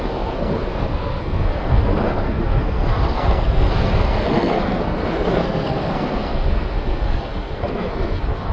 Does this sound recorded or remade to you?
remade